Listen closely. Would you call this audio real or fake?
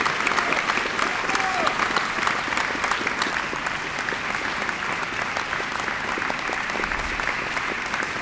real